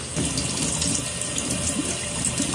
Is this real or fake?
real